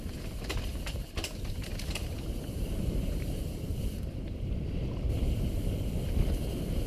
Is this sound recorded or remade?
remade